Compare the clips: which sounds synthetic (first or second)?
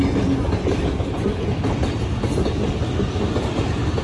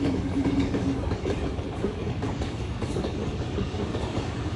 second